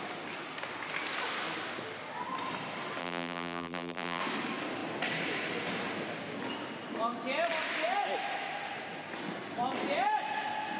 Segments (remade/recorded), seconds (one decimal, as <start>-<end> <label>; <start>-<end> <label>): 0.0-3.0 recorded; 3.0-4.2 remade; 4.2-10.8 recorded

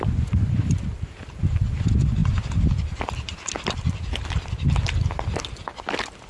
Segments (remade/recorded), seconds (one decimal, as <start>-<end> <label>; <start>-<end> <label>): 0.0-2.2 remade; 2.2-6.3 recorded